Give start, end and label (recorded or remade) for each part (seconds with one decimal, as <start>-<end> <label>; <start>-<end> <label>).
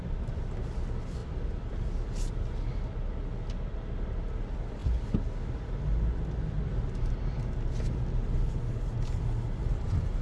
0.0-10.2 recorded